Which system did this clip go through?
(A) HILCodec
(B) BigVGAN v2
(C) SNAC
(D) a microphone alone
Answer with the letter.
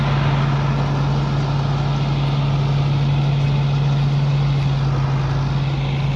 D